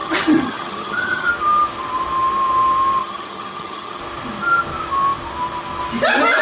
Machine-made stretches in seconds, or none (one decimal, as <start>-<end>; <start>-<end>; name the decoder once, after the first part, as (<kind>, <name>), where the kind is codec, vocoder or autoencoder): 0.0-1.3 (vocoder, HiFi-GAN); 3.0-4.0